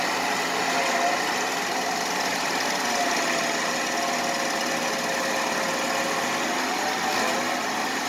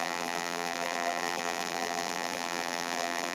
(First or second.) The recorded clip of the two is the first